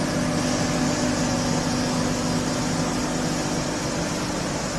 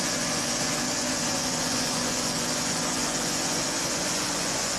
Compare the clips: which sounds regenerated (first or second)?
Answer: second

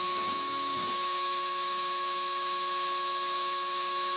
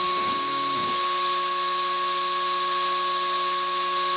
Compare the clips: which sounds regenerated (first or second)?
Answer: first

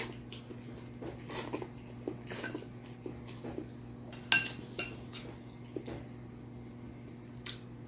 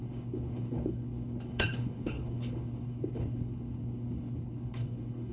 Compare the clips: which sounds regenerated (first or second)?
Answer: second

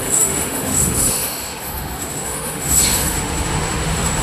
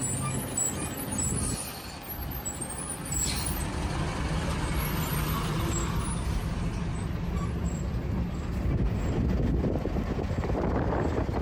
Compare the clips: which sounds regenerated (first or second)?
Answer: first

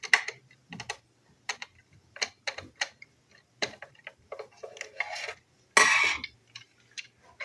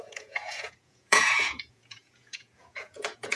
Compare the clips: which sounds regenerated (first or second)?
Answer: second